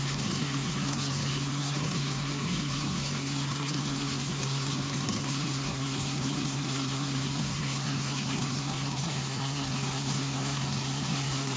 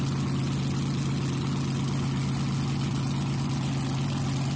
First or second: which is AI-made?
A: first